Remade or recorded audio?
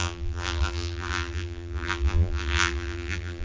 remade